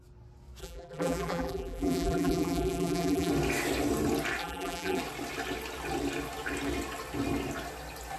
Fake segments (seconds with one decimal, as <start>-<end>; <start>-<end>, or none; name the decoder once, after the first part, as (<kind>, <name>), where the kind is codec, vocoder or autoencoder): 0.6-3.3 (vocoder, BigVGAN v2); 4.4-5.0